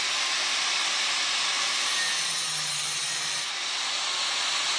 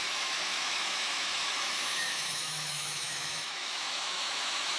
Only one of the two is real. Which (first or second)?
first